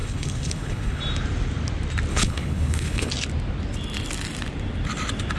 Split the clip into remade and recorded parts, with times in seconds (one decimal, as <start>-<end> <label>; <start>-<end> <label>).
0.0-1.0 remade; 1.0-2.1 recorded; 2.1-3.1 remade; 3.1-5.4 recorded